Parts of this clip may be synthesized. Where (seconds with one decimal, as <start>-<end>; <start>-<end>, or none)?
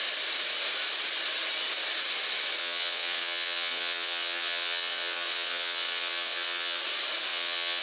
2.6-6.8; 7.3-7.8